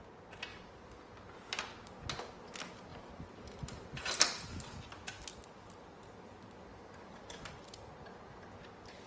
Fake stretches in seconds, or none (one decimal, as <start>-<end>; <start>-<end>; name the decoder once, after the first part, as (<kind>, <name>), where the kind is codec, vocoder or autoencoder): 0.5-1.1 (vocoder, BigVGAN v2); 6.7-7.5